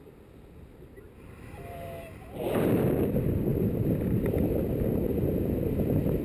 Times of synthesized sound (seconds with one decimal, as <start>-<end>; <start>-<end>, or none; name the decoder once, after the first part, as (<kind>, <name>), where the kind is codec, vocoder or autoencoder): 3.5-4.6 (vocoder, BigVGAN v2)

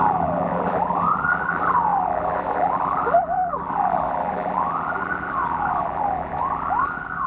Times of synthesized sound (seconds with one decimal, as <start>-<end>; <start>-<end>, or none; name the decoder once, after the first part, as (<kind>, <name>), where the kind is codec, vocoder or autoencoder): 0.0-7.3 (vocoder, BigVGAN v2)

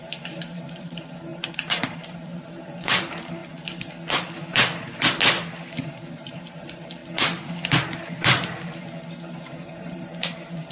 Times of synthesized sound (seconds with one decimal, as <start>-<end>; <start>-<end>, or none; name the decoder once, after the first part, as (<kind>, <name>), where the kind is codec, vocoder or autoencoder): 0.0-3.4 (vocoder, BigVGAN v2); 6.1-7.0; 9.4-10.7

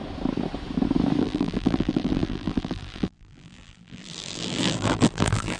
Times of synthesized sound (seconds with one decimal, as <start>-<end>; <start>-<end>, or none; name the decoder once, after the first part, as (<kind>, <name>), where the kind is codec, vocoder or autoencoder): 1.2-5.6 (vocoder, BigVGAN v2)

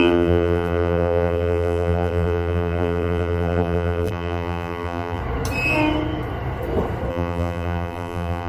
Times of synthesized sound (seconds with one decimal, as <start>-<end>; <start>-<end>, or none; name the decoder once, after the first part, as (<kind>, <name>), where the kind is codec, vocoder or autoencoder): 0.0-5.2 (vocoder, BigVGAN v2); 7.1-8.5

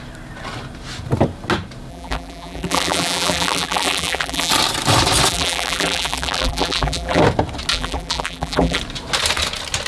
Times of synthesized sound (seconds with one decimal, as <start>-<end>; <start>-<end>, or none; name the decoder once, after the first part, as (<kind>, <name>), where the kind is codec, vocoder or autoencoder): 1.9-4.5 (vocoder, BigVGAN v2); 5.3-7.2; 7.7-8.8

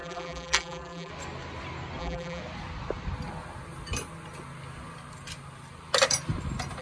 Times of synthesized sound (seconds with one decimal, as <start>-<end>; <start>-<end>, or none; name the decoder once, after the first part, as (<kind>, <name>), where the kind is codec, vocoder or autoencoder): 0.0-1.1 (vocoder, BigVGAN v2); 2.0-2.4

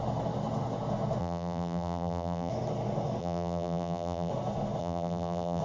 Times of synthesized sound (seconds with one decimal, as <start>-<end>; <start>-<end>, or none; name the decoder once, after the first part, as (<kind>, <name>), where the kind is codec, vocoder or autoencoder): 1.2-2.5 (vocoder, BigVGAN v2); 3.2-4.3; 4.8-5.6